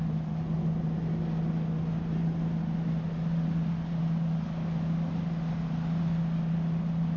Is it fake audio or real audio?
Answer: real